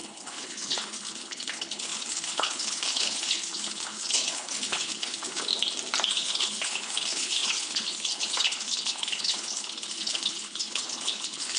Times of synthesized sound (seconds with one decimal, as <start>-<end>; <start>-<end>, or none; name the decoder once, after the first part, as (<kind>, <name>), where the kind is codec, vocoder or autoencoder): 0.0-5.5 (codec, HILCodec); 6.1-11.6